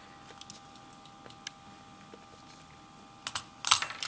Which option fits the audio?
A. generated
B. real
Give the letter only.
B